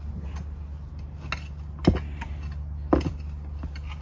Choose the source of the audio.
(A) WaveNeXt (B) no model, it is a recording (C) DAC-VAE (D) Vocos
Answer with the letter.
B